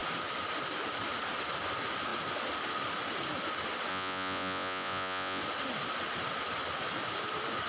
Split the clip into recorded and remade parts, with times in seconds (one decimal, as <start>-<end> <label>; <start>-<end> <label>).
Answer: 0.0-3.9 recorded; 3.9-5.4 remade; 5.4-7.7 recorded